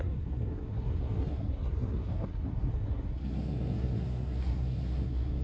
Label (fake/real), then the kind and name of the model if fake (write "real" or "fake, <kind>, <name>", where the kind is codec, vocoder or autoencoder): fake, codec, SNAC